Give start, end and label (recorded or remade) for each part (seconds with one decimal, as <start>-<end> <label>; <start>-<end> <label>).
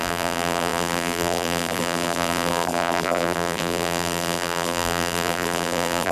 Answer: 0.0-6.1 remade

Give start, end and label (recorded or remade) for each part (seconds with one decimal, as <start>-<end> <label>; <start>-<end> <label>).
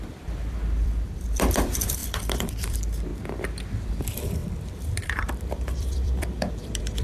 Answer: 0.0-3.1 remade; 3.1-4.0 recorded; 4.0-7.0 remade